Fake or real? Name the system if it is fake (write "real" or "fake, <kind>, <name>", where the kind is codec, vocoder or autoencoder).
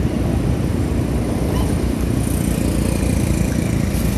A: real